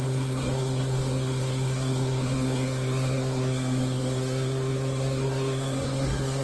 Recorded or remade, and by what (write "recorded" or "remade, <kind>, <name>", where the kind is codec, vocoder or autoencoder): remade, codec, SNAC